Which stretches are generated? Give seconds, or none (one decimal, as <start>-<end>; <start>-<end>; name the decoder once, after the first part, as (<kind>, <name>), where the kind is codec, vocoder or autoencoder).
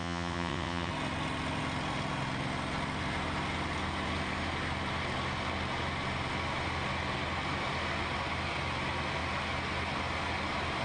0.0-0.9 (vocoder, WaveNeXt)